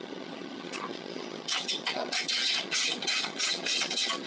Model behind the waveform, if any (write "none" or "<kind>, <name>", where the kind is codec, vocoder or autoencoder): vocoder, HiFi-GAN